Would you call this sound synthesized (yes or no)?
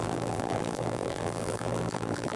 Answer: yes